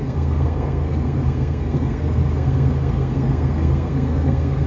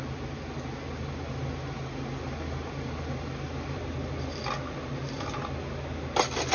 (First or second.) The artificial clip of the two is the first